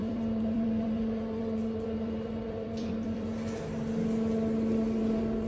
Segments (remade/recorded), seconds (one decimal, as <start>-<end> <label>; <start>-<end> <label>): 0.0-3.3 remade; 3.3-5.0 recorded; 5.0-5.5 remade